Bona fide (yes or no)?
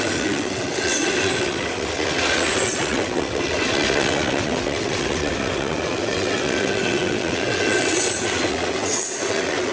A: no